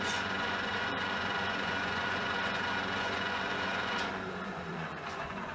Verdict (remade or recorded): remade